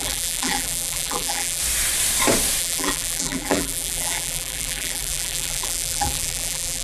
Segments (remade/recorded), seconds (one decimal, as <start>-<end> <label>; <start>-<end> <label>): 0.0-1.6 remade; 1.6-2.6 recorded; 2.6-6.8 remade